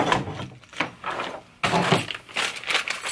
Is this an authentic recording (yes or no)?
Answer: yes